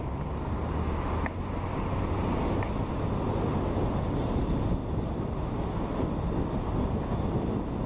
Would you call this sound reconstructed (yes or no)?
no